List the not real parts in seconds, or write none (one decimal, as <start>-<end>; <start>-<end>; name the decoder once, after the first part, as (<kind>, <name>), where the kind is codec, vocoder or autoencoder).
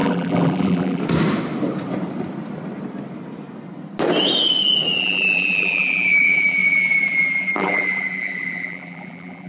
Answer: 0.0-1.0 (vocoder, BigVGAN v2); 5.0-9.5